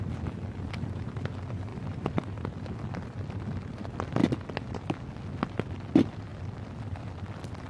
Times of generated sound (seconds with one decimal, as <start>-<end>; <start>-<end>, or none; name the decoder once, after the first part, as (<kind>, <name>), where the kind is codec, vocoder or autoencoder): 1.7-2.2 (vocoder, BigVGAN v2)